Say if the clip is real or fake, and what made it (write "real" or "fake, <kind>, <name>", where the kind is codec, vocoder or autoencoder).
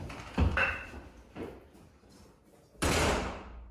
real